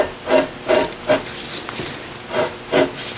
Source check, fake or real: real